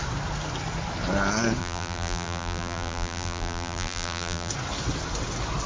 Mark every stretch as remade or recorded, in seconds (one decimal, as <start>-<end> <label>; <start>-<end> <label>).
0.0-1.6 recorded; 1.6-4.5 remade; 4.5-5.7 recorded